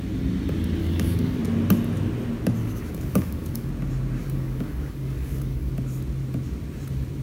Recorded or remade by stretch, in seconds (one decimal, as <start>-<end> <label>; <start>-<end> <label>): 0.0-0.8 recorded; 0.8-1.4 remade; 1.4-2.6 recorded; 2.6-3.7 remade; 3.7-4.2 recorded; 4.2-5.7 remade; 5.7-7.2 recorded

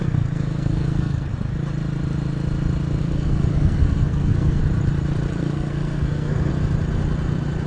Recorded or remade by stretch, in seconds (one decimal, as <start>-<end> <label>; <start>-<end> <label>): 0.0-1.3 remade; 1.3-3.0 recorded; 3.0-4.6 remade; 4.6-5.3 recorded; 5.3-6.5 remade; 6.5-7.7 recorded

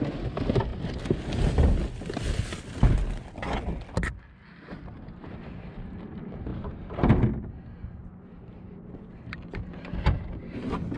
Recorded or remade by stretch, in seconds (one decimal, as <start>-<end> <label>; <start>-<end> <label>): 0.0-8.0 recorded; 8.0-9.9 remade; 9.9-11.0 recorded

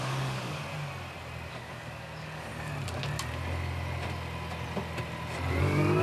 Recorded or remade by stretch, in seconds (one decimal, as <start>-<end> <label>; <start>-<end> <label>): 0.0-0.7 remade; 0.7-1.5 recorded; 1.5-2.5 remade; 2.5-5.6 recorded; 5.6-6.0 remade

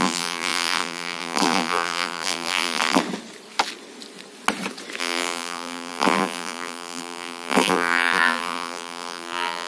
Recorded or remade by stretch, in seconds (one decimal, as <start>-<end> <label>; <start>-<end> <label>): 0.0-3.0 remade; 3.0-5.0 recorded; 5.0-9.7 remade

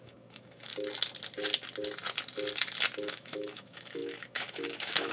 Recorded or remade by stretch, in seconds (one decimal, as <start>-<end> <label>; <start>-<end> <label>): 0.0-0.7 remade; 0.7-3.1 recorded; 3.1-5.1 remade

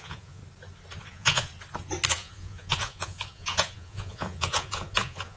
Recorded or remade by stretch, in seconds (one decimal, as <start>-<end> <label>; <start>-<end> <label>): 0.0-0.4 remade; 0.4-1.0 recorded; 1.0-1.5 remade; 1.5-2.1 recorded; 2.1-5.4 remade

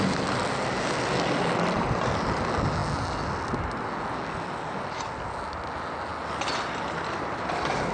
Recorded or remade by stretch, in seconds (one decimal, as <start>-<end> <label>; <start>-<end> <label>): 0.0-7.9 recorded